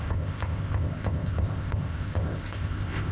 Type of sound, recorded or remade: remade